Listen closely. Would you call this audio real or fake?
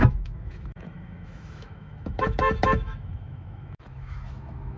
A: fake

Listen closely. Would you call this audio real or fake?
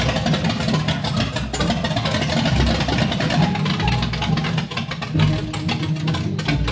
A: real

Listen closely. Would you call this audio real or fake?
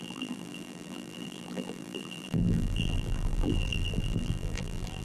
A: fake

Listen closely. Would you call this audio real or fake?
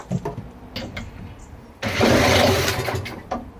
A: real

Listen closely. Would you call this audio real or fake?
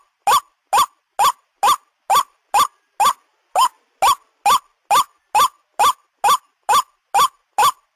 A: real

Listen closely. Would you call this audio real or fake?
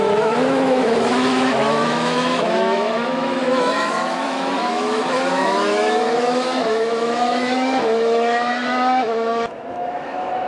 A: fake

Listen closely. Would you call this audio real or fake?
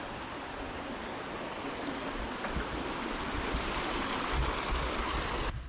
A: real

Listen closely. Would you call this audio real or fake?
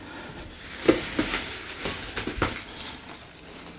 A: real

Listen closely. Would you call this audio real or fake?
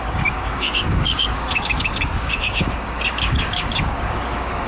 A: fake